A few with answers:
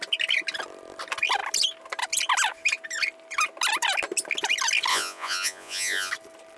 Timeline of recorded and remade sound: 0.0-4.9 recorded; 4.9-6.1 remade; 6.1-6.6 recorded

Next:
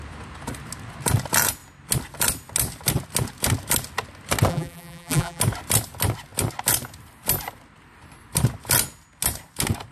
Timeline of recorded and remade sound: 0.0-4.5 recorded; 4.5-5.4 remade; 5.4-9.9 recorded

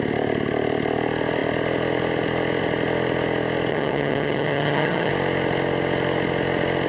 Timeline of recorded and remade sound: 0.0-3.7 recorded; 3.7-5.1 remade; 5.1-6.9 recorded

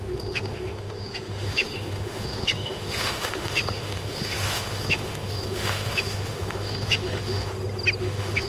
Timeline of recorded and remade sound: 0.0-7.5 remade; 7.5-8.0 recorded; 8.0-8.5 remade

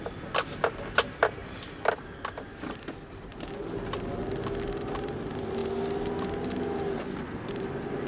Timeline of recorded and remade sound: 0.0-8.1 recorded

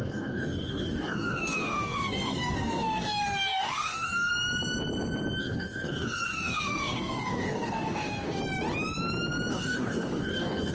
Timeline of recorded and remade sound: 0.0-4.3 remade; 4.3-5.4 recorded; 5.4-8.4 remade; 8.4-9.5 recorded; 9.5-10.7 remade